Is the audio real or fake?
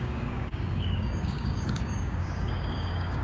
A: fake